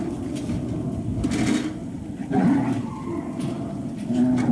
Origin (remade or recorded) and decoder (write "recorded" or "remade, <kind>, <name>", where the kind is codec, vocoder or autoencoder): recorded